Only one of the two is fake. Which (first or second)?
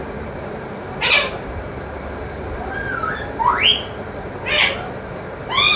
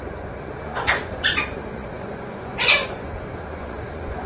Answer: second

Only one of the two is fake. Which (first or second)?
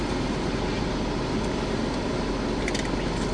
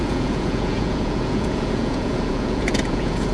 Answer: second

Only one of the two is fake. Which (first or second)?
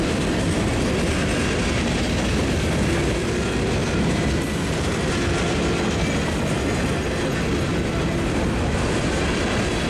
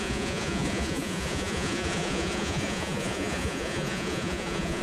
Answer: second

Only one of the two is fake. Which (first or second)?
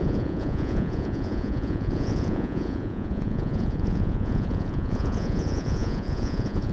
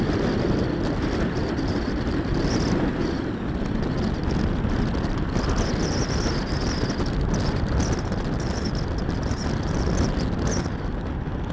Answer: first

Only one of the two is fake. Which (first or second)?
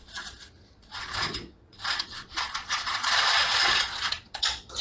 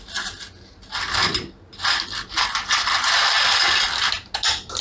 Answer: first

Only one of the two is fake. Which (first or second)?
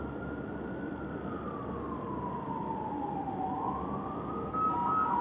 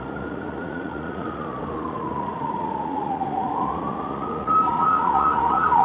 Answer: second